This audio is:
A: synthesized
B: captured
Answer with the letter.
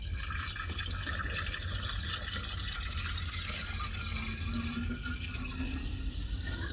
B